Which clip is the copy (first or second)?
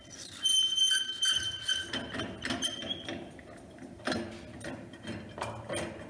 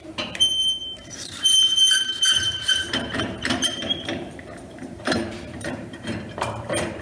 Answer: second